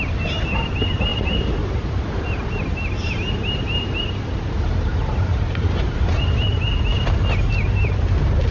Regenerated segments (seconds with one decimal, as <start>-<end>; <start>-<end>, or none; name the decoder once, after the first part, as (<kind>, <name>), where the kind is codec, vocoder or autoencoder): 1.1-6.2 (vocoder, BigVGAN v2)